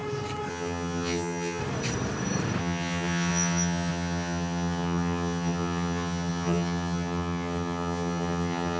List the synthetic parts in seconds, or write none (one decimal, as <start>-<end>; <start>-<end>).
0.5-1.6; 2.6-8.8